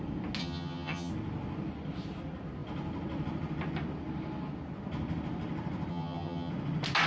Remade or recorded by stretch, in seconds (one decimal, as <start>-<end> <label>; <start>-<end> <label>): 0.0-0.4 recorded; 0.4-1.1 remade; 1.1-5.9 recorded; 5.9-6.5 remade; 6.5-7.1 recorded